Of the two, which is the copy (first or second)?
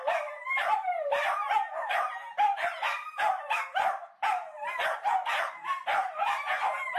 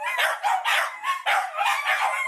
first